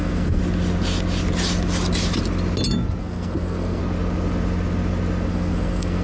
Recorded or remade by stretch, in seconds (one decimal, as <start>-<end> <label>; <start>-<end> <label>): 0.0-0.4 remade; 0.4-3.0 recorded; 3.0-3.8 remade; 3.8-5.3 recorded; 5.3-6.0 remade